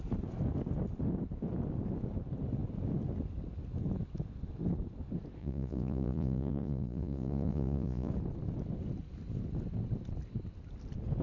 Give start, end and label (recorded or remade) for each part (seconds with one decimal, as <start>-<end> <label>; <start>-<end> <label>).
0.0-5.4 recorded; 5.4-8.1 remade; 8.1-11.2 recorded

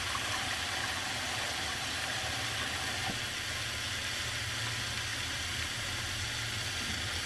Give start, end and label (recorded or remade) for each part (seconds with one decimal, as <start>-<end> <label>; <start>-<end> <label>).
0.0-5.1 recorded; 5.1-6.3 remade; 6.3-7.3 recorded

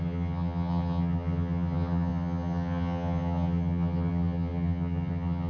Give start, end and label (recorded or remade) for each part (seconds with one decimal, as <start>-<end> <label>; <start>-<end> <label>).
0.0-5.5 remade